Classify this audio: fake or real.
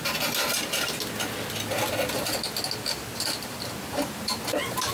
real